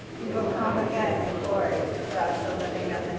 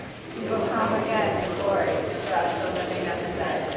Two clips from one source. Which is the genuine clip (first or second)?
second